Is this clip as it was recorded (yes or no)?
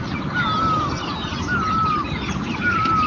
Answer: yes